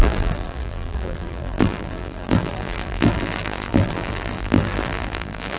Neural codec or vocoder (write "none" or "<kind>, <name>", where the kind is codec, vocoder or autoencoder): vocoder, BigVGAN v2